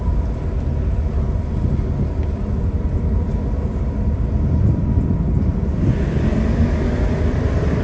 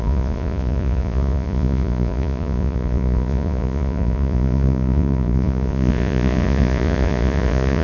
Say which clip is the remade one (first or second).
second